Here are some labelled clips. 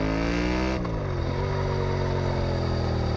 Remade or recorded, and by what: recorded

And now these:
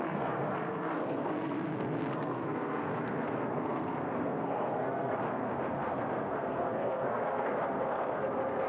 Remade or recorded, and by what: remade, codec, SNAC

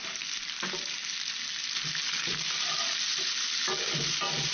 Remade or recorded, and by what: recorded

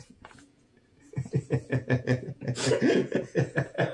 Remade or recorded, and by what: remade, vocoder, Vocos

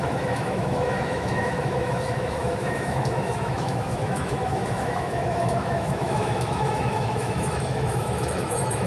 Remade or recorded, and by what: remade, autoencoder, DAC-VAE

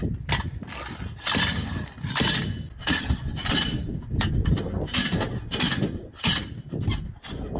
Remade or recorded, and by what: recorded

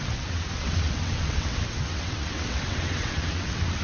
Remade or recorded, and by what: remade, vocoder, WaveNeXt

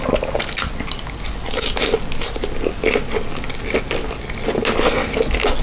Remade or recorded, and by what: recorded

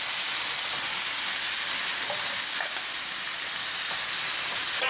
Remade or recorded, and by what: recorded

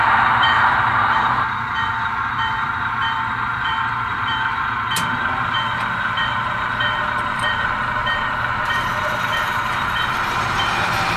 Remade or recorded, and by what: remade, vocoder, BigVGAN v2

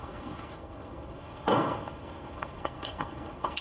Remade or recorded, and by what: remade, codec, SNAC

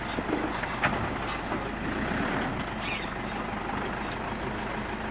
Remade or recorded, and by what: recorded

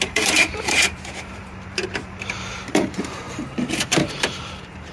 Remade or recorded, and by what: remade, vocoder, BigVGAN v2